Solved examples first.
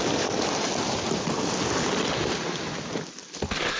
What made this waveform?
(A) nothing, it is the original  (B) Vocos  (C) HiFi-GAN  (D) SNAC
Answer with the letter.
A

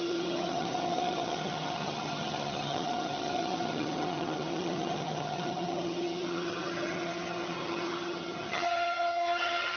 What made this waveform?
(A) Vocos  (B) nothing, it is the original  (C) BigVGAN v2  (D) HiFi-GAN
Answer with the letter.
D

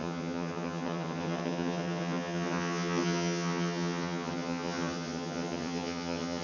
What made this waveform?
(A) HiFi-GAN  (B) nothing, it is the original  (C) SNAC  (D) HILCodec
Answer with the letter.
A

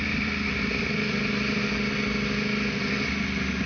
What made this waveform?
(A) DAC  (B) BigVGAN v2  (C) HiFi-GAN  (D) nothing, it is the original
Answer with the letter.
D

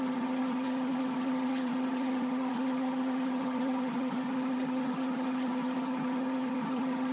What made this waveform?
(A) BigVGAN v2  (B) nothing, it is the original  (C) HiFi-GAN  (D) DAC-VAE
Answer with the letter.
C